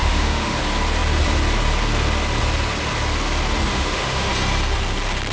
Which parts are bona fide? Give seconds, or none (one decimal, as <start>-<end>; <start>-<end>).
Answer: 0.6-3.7; 4.3-5.3